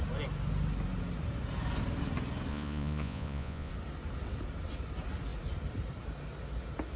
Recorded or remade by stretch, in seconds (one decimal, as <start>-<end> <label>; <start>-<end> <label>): 0.0-2.5 recorded; 2.5-3.7 remade; 3.7-7.0 recorded